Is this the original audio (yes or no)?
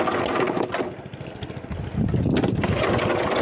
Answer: yes